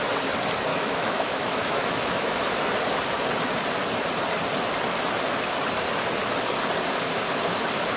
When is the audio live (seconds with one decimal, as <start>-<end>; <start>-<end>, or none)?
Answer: 0.0-0.7; 2.5-8.0